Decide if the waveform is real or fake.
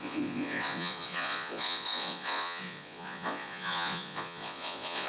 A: fake